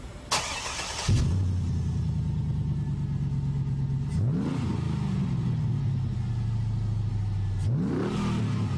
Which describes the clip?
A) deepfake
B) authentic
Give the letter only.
B